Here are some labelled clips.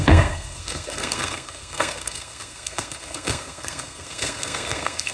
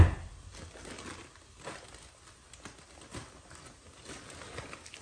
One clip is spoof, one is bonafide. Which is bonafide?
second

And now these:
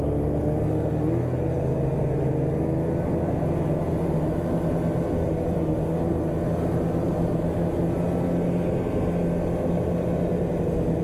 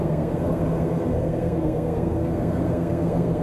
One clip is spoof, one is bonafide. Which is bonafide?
first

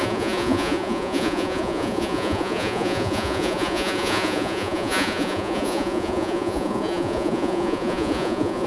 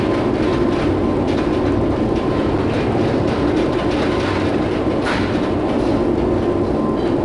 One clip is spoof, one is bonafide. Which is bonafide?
second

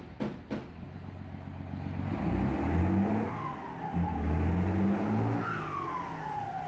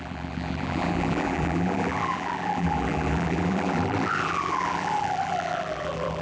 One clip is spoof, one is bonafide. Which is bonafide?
first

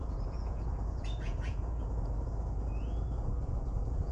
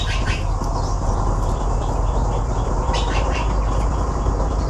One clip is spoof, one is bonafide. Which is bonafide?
second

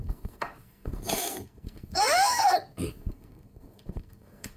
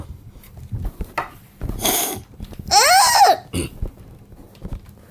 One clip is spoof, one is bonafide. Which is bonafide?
second